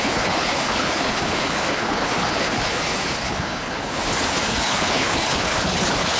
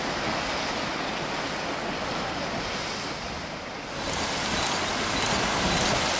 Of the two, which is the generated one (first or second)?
first